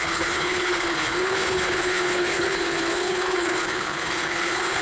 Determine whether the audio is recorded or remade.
remade